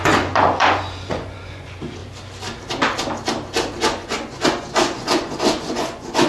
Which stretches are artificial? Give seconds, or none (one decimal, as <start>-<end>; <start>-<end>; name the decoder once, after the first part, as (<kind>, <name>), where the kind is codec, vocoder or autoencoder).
0.0-2.0 (vocoder, Vocos); 3.8-6.3